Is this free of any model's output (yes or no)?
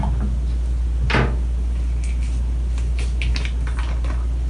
yes